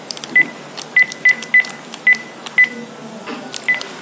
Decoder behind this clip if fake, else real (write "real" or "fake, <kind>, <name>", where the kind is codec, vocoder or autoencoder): real